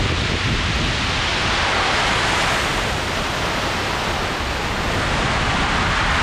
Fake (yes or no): no